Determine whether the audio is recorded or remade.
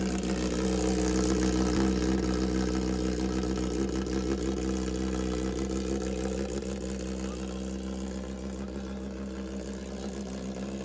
recorded